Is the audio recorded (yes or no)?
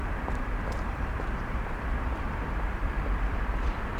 no